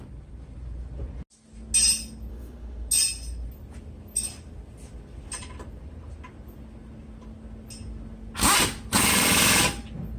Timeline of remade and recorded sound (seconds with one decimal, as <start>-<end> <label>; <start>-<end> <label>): 0.0-2.3 recorded; 2.3-2.9 remade; 2.9-10.2 recorded

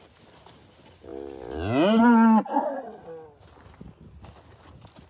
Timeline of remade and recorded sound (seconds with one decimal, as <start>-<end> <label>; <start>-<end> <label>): 0.0-5.1 recorded